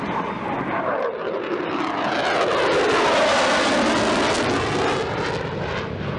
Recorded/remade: recorded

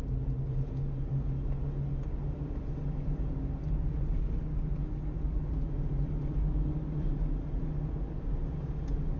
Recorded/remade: recorded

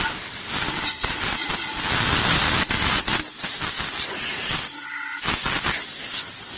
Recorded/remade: recorded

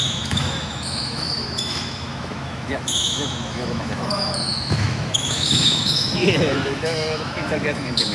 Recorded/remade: remade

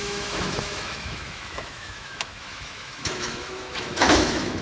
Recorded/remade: remade